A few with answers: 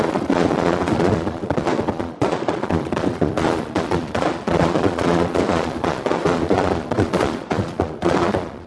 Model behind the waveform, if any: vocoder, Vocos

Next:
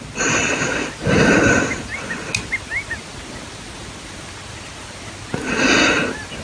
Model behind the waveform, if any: none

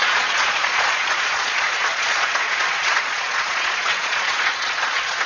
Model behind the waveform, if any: vocoder, Vocos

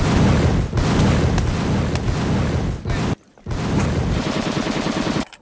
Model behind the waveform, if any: none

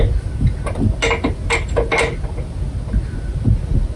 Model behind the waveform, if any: none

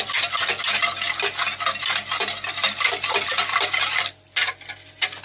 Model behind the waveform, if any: none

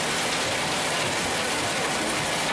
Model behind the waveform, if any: none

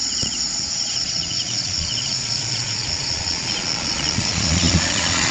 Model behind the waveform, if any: vocoder, Vocos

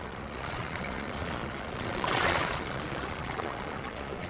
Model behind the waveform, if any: vocoder, Vocos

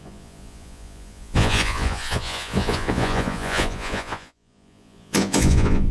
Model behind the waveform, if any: vocoder, Vocos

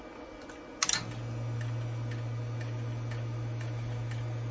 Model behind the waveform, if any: none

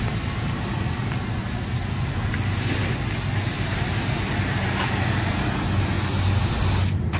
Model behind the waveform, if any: none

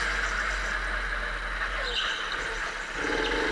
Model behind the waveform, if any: none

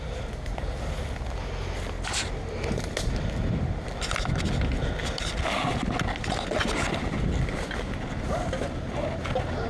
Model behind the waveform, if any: none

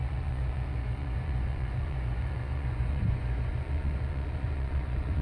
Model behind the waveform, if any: vocoder, Vocos